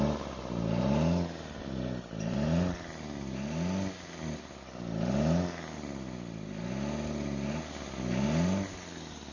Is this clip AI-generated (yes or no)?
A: no